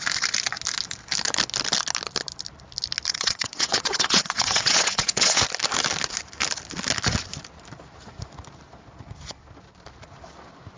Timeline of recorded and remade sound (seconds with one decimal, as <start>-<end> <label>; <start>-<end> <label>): 0.0-3.1 recorded; 3.1-5.4 remade; 5.4-10.8 recorded